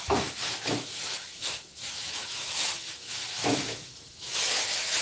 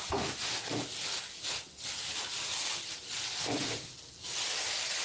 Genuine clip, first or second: second